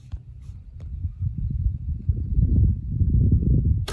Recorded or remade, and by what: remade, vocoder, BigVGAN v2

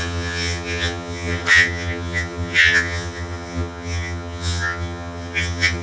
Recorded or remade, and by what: remade, vocoder, HiFi-GAN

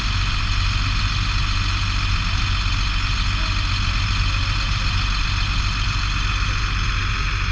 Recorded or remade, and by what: recorded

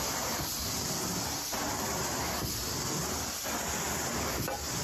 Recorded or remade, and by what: recorded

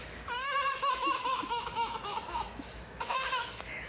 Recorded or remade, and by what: remade, autoencoder, DAC-VAE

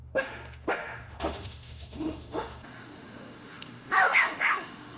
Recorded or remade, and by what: remade, autoencoder, DAC-VAE